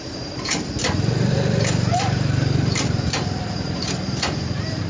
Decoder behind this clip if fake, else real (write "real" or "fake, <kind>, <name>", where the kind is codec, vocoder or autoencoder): fake, vocoder, BigVGAN v2